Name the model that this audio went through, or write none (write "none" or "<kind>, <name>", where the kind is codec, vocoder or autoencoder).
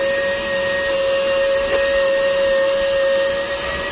none